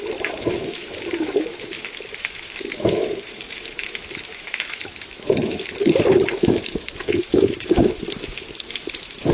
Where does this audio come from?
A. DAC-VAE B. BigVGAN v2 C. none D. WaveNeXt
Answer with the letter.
A